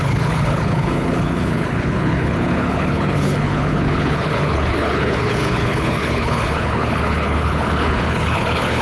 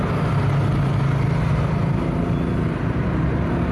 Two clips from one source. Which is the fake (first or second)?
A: first